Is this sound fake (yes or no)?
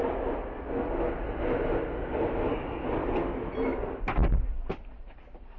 no